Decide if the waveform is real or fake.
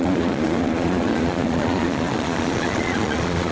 fake